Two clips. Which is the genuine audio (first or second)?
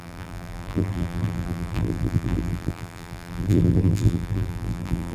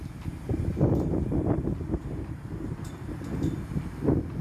second